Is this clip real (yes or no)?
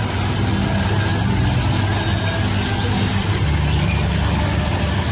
yes